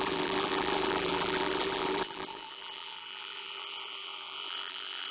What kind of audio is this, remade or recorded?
remade